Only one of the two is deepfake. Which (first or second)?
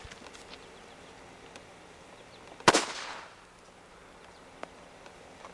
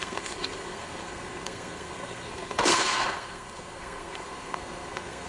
second